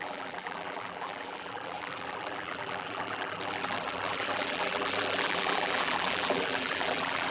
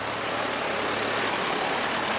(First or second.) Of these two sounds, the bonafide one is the second